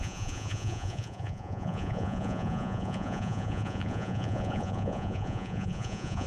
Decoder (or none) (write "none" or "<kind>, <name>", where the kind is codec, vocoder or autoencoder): vocoder, Vocos